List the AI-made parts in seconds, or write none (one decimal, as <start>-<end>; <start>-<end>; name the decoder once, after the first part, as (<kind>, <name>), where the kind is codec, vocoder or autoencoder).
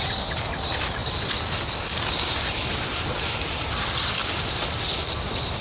none